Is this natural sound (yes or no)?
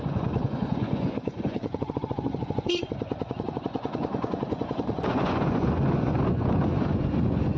no